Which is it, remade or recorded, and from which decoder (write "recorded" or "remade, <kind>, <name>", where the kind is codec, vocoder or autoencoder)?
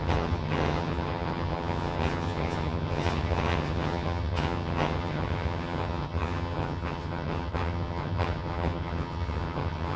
remade, vocoder, HiFi-GAN